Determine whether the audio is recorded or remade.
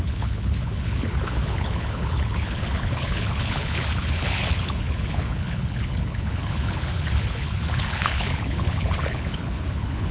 remade